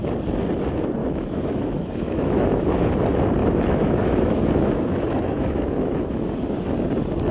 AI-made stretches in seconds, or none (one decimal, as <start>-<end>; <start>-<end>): 1.0-2.9; 3.4-6.3